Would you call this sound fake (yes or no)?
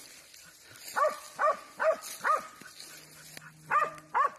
no